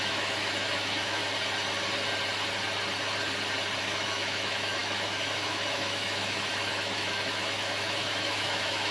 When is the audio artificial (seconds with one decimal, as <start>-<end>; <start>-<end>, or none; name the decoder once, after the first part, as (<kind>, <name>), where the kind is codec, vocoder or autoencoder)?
0.0-1.2 (autoencoder, DAC-VAE); 3.8-8.9